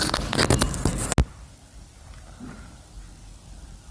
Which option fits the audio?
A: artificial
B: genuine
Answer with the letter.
B